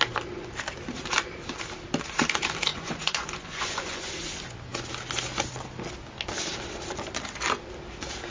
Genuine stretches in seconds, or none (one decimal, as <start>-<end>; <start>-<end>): 0.0-2.7; 4.1-8.3